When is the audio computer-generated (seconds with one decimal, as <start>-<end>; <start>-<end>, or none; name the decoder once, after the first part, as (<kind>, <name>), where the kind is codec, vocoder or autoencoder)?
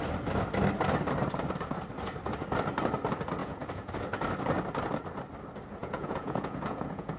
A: 3.4-3.9 (vocoder, Vocos); 5.8-7.2